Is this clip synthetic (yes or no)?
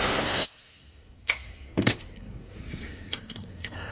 yes